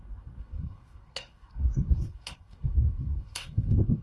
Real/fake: fake